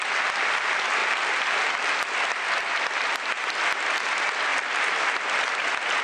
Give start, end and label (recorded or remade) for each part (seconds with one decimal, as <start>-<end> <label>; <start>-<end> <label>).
0.0-1.0 recorded; 1.0-2.6 remade; 2.6-6.0 recorded